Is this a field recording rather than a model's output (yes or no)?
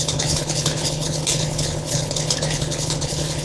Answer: no